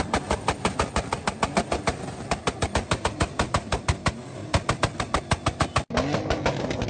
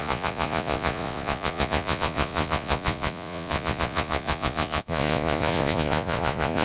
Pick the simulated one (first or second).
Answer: second